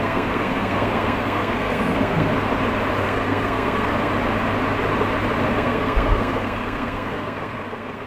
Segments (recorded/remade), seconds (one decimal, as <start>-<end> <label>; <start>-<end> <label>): 0.0-2.3 remade; 2.3-3.0 recorded; 3.0-4.1 remade; 4.1-5.5 recorded; 5.5-8.1 remade